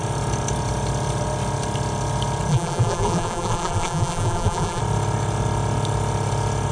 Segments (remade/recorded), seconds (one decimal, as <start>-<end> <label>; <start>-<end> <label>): 0.0-2.5 recorded; 2.5-4.8 remade; 4.8-6.7 recorded

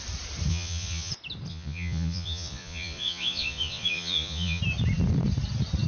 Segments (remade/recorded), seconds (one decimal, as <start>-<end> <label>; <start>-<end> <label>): 0.0-0.5 recorded; 0.5-1.1 remade; 1.1-1.5 recorded; 1.5-4.6 remade; 4.6-5.9 recorded

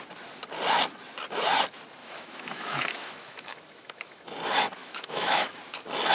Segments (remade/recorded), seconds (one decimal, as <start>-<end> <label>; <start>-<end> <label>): 0.0-2.0 recorded; 2.0-4.2 remade; 4.2-4.8 recorded; 4.8-5.6 remade; 5.6-6.1 recorded

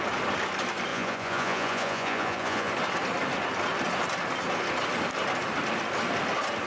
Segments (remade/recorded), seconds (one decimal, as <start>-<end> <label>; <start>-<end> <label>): 0.0-0.9 recorded; 0.9-2.7 remade; 2.7-6.7 recorded

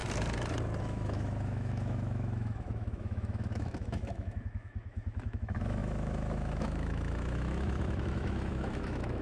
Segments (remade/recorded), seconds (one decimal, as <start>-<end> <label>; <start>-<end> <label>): 0.0-0.8 recorded; 0.8-9.2 remade

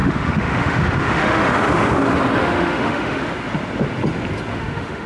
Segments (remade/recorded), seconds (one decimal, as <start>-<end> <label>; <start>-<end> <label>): 0.0-1.9 remade; 1.9-2.4 recorded; 2.4-3.3 remade; 3.3-4.5 recorded; 4.5-5.1 remade